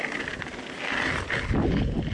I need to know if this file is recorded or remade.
recorded